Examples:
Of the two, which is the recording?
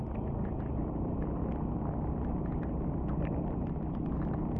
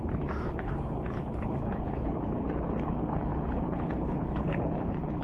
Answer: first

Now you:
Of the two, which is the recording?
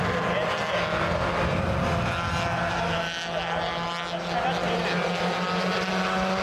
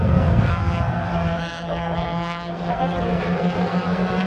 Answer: first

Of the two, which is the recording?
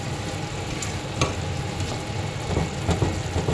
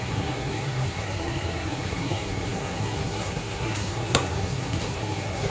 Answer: first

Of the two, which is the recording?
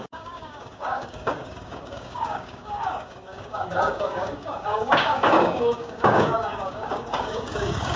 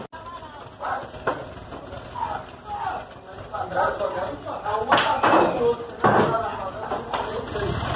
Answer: second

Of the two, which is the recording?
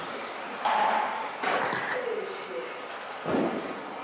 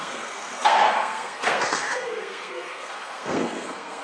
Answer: first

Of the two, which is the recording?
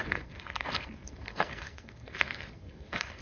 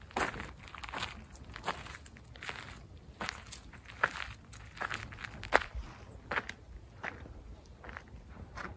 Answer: second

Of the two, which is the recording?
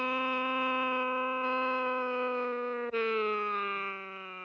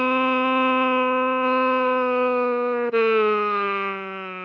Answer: first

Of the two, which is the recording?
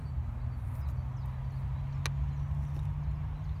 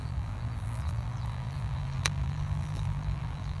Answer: first